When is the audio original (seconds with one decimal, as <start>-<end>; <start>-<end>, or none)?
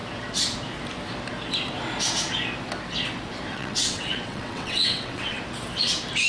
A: 0.0-3.5; 5.4-6.3